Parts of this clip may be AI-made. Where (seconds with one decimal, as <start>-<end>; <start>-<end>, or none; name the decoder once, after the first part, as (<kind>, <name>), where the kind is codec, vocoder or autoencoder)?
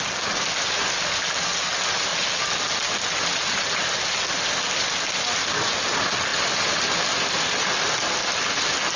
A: none